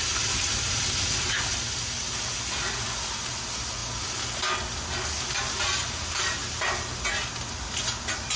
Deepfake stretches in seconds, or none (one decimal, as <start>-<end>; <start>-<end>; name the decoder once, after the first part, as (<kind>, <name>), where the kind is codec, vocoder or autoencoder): none